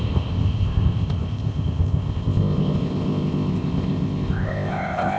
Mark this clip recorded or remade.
remade